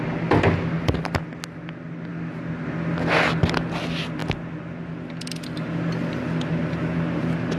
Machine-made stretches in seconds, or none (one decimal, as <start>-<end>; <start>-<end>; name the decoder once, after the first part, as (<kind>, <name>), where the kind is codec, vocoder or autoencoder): none